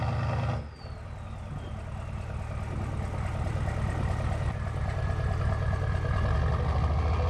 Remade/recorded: recorded